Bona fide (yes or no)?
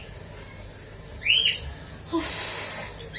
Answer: yes